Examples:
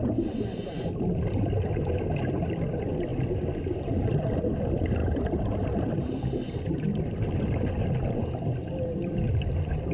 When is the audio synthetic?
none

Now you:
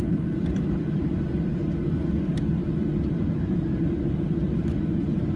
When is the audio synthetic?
0.0-1.5 (vocoder, BigVGAN v2); 2.8-5.4

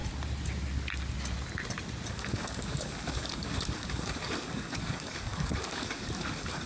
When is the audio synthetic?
2.1-6.7 (codec, DAC)

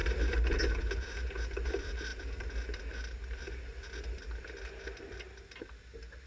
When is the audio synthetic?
none

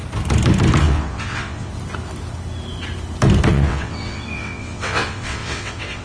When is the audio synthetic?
0.8-1.7 (vocoder, WaveNeXt); 3.5-6.0

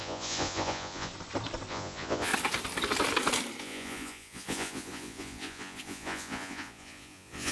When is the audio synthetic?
0.0-1.1 (vocoder, Vocos); 1.7-2.3; 3.6-7.5

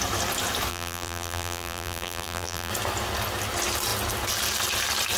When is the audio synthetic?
0.7-2.7 (vocoder, BigVGAN v2)